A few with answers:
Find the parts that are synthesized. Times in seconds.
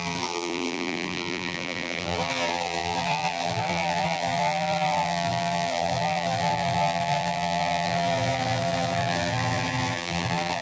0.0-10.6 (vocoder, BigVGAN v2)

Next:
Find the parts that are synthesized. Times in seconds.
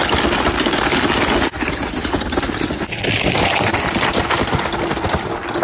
none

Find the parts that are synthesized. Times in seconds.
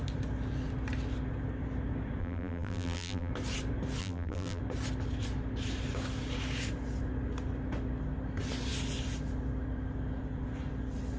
2.2-3.3 (vocoder, BigVGAN v2); 4.0-4.6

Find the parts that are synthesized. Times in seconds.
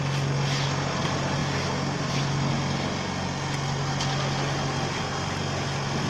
none